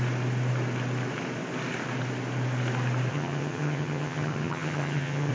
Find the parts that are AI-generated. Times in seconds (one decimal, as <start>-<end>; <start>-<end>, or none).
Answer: 3.1-5.3